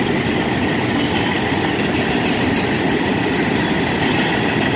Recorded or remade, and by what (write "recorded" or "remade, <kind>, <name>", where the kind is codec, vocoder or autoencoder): recorded